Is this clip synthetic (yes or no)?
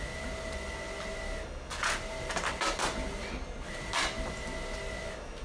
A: no